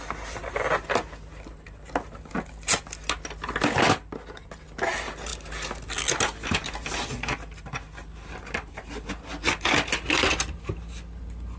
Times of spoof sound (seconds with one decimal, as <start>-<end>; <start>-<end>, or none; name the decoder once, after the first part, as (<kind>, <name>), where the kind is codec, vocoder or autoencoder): none